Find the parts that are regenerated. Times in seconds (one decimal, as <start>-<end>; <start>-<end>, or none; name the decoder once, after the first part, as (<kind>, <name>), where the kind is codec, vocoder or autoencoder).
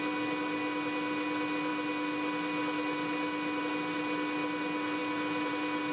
none